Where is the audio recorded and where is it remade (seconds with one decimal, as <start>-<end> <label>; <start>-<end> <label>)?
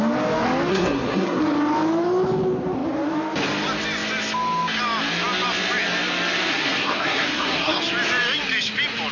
0.0-0.7 recorded; 0.7-1.4 remade; 1.4-6.5 recorded; 6.5-7.8 remade; 7.8-9.1 recorded